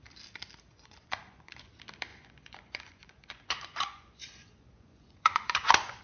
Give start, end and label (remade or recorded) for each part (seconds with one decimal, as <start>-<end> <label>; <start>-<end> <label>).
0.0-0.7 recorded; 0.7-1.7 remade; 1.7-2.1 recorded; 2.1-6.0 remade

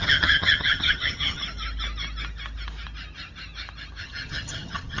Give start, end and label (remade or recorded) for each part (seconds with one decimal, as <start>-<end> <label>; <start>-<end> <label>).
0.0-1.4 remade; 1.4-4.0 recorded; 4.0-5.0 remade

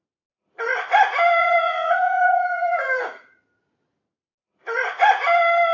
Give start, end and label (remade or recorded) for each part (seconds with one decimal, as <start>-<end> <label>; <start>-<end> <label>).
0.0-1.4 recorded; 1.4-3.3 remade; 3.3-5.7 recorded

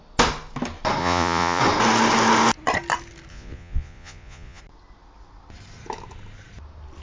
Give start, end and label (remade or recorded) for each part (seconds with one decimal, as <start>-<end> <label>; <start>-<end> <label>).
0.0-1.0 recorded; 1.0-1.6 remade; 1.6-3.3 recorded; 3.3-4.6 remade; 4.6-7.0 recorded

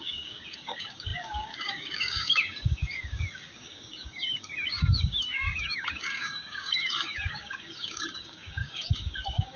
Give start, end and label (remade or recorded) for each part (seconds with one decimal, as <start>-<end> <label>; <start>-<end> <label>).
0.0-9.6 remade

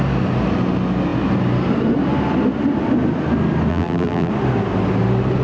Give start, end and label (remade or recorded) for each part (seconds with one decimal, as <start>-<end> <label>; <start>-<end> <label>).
0.0-3.7 recorded; 3.7-4.3 remade; 4.3-5.4 recorded